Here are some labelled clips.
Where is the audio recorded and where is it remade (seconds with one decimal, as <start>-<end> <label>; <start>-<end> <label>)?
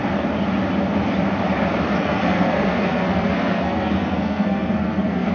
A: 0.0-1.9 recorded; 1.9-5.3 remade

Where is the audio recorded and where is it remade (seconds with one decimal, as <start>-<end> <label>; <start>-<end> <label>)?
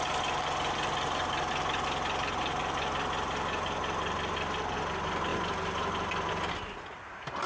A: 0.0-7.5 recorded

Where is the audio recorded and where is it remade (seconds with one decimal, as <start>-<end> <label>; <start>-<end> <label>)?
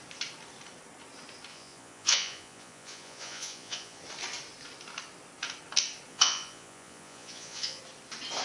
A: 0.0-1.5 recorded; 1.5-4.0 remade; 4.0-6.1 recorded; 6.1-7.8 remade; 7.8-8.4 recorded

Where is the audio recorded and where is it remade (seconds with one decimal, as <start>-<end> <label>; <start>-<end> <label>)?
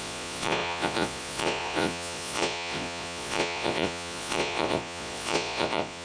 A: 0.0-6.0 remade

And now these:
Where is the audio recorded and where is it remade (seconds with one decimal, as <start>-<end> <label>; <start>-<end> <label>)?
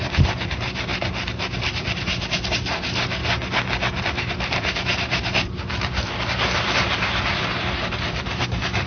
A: 0.0-3.2 remade; 3.2-4.0 recorded; 4.0-8.9 remade